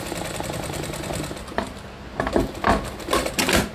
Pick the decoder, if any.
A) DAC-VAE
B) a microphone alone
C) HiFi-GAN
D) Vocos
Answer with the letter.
B